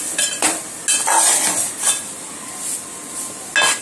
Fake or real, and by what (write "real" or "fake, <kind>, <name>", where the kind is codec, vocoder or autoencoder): real